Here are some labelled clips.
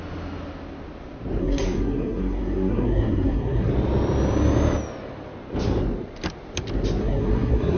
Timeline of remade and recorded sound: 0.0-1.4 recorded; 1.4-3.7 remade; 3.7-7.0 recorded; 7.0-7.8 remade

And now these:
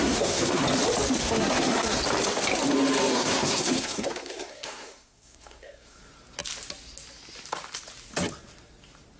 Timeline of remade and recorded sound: 0.0-0.6 remade; 0.6-1.2 recorded; 1.2-2.0 remade; 2.0-3.1 recorded; 3.1-6.0 remade; 6.0-9.2 recorded

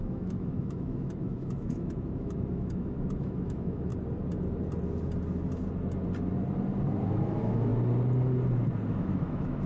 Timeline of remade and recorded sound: 0.0-3.9 remade; 3.9-7.1 recorded; 7.1-7.7 remade; 7.7-8.9 recorded; 8.9-9.7 remade

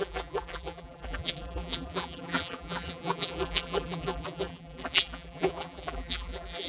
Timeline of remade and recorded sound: 0.0-6.7 remade

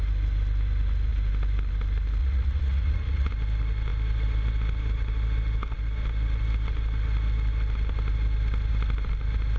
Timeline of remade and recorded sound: 0.0-2.2 recorded; 2.2-3.3 remade; 3.3-9.6 recorded